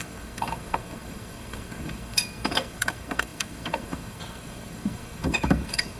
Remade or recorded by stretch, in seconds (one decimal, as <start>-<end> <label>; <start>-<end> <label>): 0.0-6.0 remade